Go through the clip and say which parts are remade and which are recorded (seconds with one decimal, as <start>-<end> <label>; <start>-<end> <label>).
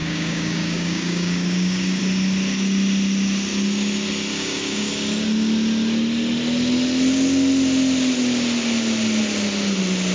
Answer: 0.0-2.0 remade; 2.0-4.3 recorded; 4.3-4.9 remade; 4.9-10.1 recorded